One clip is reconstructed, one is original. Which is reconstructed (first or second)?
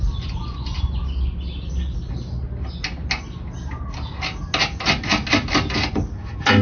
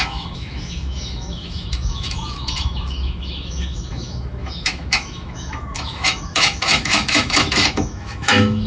second